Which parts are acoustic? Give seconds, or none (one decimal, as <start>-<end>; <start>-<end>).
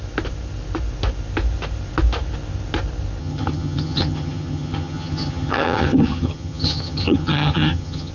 0.0-3.2